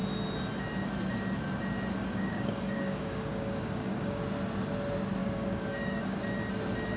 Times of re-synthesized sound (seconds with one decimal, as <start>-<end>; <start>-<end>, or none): 2.0-4.2; 5.2-6.2